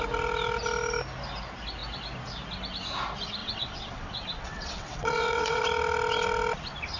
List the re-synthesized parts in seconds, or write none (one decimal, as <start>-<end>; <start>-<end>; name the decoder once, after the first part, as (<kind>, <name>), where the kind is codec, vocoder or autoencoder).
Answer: 3.4-5.6 (vocoder, WaveNeXt)